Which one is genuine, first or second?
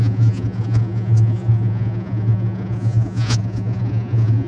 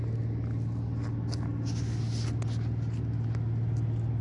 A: second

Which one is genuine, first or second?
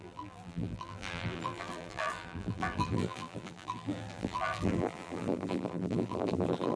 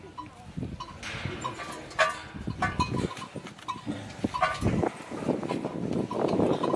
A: second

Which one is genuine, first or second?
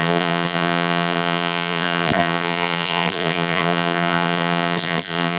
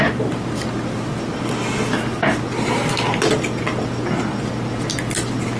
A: second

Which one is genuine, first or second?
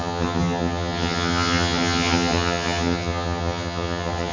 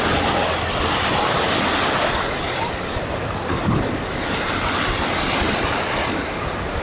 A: second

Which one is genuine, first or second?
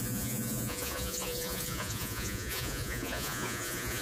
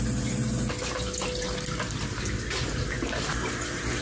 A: second